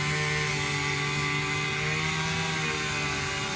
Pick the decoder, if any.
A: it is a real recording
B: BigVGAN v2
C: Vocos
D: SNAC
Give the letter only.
A